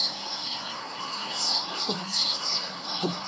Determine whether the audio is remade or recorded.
remade